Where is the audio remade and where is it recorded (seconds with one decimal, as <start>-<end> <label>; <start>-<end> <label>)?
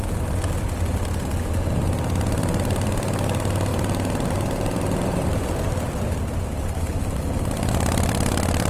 0.0-3.7 recorded; 3.7-8.7 remade